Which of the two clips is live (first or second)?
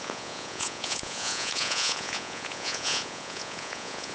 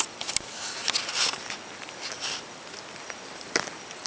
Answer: second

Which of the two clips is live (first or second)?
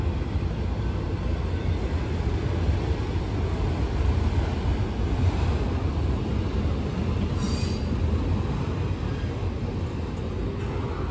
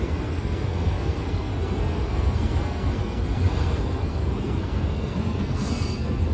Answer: first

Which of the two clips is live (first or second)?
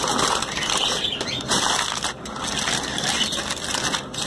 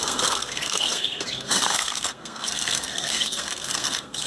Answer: first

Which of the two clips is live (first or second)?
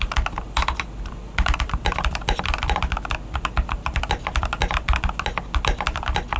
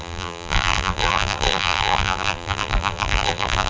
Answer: first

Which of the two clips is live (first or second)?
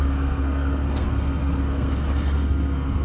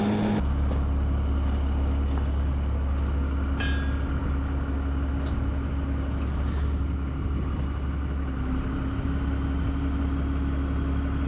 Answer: second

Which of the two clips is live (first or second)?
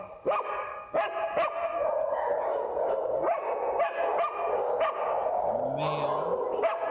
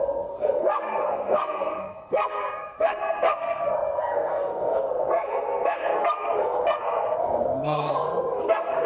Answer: first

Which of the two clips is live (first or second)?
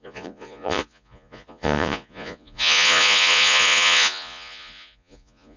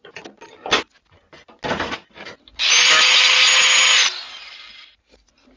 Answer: second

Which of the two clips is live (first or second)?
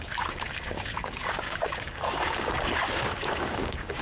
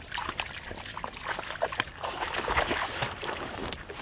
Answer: second